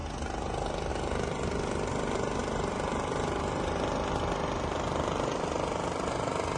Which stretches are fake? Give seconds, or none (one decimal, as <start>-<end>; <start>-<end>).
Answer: 0.0-6.6